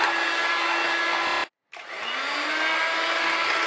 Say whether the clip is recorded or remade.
recorded